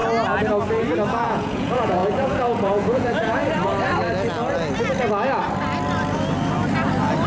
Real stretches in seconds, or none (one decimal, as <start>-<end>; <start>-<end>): 0.0-1.1; 3.4-7.3